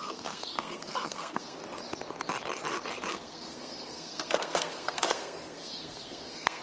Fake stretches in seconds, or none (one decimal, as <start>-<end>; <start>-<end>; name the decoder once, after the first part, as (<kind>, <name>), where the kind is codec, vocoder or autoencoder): 0.0-1.6 (codec, SNAC); 3.1-6.6